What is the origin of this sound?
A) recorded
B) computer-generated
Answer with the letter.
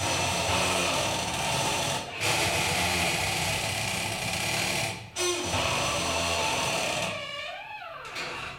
B